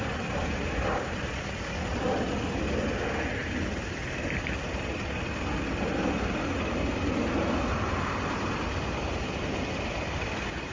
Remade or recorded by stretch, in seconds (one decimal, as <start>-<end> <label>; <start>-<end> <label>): 0.0-10.7 recorded